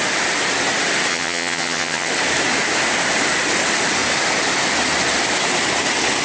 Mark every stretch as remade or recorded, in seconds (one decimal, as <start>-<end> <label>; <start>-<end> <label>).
0.0-1.1 recorded; 1.1-2.1 remade; 2.1-6.2 recorded